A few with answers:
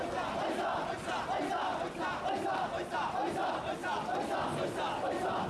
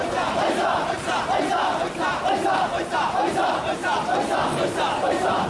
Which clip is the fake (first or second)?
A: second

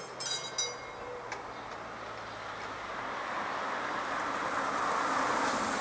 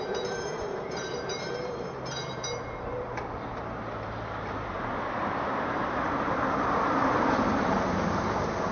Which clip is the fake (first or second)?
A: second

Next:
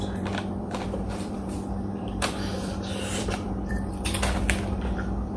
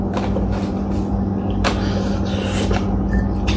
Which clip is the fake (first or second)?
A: first